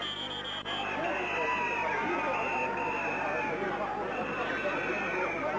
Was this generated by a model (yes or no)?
no